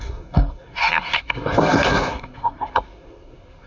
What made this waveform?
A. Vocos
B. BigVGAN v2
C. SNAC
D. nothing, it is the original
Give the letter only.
C